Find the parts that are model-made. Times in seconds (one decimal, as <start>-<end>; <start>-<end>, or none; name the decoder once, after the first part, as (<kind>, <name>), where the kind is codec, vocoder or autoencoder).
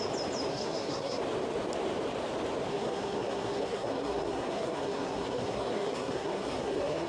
0.5-1.2 (codec, SNAC); 2.7-7.1